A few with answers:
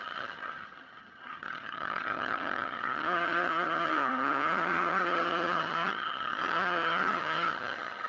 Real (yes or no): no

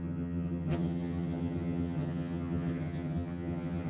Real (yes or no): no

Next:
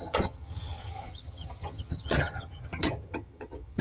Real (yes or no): no